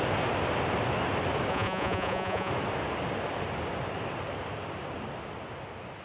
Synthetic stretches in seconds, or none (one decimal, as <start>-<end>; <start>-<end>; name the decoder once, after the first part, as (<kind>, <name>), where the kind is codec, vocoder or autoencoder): 1.5-2.5 (vocoder, Vocos)